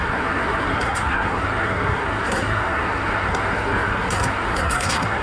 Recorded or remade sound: remade